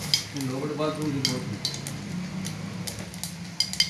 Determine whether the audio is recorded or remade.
recorded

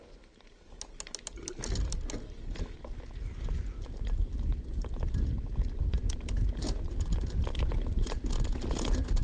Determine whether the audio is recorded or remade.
recorded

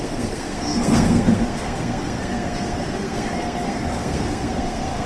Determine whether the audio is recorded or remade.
remade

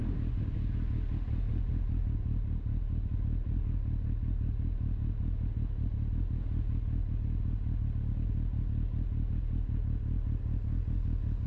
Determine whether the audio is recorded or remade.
recorded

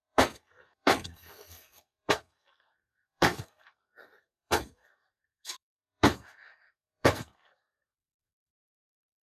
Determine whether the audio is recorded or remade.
remade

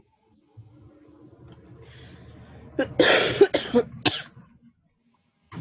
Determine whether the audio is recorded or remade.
recorded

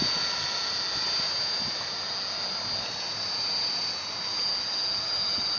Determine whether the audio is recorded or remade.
recorded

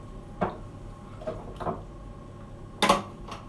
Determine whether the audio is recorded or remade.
recorded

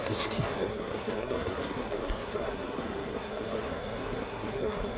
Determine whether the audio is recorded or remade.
remade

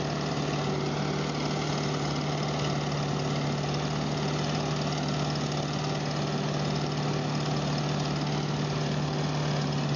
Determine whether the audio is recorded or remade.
recorded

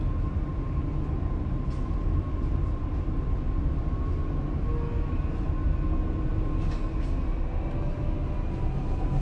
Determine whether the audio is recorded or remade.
recorded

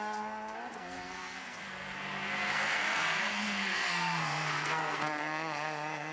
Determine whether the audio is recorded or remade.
remade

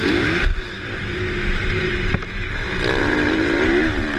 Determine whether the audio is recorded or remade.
recorded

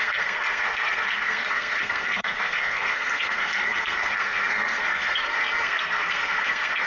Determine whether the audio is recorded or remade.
remade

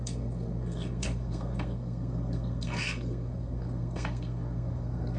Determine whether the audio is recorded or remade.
remade